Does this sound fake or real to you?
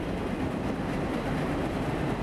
real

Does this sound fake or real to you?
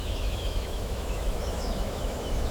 fake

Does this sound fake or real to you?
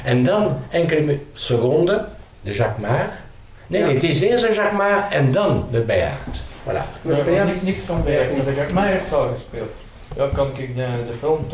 real